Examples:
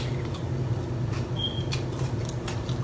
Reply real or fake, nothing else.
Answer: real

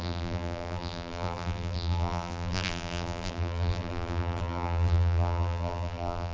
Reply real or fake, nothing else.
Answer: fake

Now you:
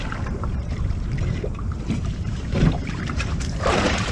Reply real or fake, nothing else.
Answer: fake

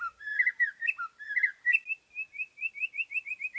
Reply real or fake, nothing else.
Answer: fake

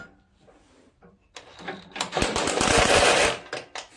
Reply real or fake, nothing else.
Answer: fake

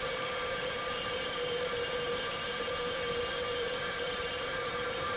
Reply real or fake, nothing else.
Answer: fake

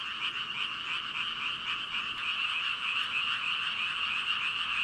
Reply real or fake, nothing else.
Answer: real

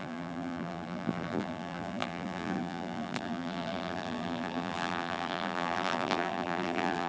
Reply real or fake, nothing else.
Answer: fake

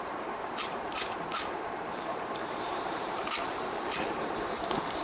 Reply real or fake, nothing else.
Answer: fake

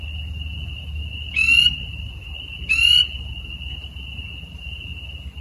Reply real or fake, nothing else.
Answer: real